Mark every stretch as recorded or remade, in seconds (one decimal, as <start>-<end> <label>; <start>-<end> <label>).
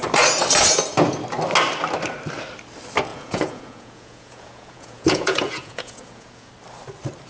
0.0-3.1 recorded; 3.1-6.5 remade; 6.5-7.3 recorded